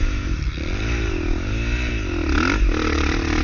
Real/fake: real